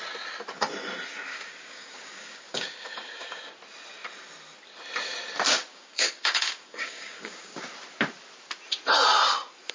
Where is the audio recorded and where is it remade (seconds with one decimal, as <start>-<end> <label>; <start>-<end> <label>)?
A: 0.0-1.3 recorded; 1.3-3.4 remade; 3.4-5.7 recorded; 5.7-7.6 remade; 7.6-9.7 recorded